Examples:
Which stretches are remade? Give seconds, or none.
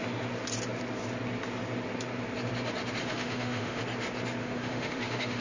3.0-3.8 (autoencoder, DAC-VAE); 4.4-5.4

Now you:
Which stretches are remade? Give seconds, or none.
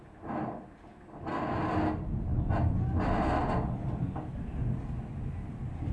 none